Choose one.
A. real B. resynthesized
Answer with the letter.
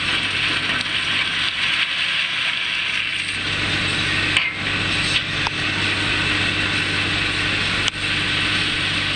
A